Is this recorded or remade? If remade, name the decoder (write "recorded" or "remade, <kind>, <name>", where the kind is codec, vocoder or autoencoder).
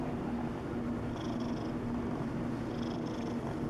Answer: recorded